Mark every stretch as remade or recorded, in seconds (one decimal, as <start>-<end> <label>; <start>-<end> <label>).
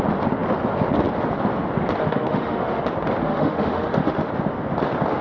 0.0-2.0 recorded; 2.0-2.8 remade; 2.8-3.2 recorded; 3.2-4.3 remade; 4.3-5.2 recorded